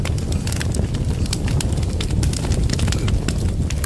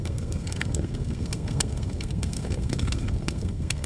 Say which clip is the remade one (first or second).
second